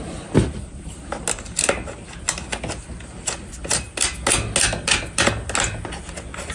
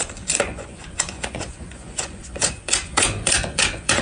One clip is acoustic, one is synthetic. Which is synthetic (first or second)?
second